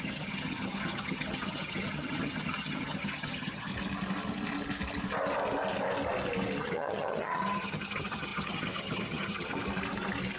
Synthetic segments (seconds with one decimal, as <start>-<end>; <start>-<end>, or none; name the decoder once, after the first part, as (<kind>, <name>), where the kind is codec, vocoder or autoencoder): 0.0-3.7 (vocoder, HiFi-GAN); 6.6-9.5